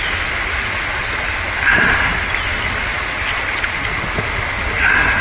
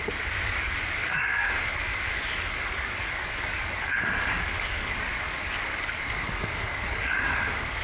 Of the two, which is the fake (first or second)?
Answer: second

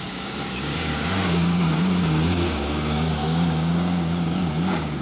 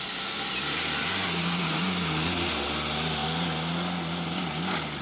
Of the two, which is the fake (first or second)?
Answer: first